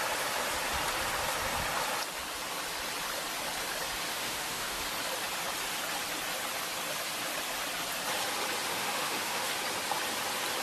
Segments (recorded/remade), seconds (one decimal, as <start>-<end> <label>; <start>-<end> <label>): 0.0-4.1 recorded; 4.1-4.8 remade; 4.8-8.7 recorded; 8.7-9.5 remade; 9.5-10.6 recorded